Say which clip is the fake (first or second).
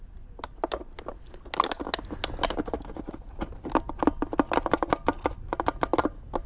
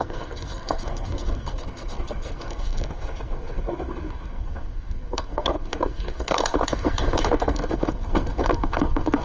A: second